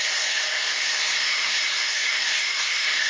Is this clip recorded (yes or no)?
no